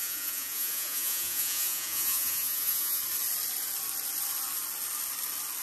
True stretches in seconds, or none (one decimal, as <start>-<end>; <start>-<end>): 3.0-5.6